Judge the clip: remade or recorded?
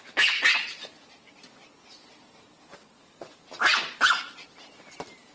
recorded